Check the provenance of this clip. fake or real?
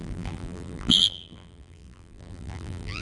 fake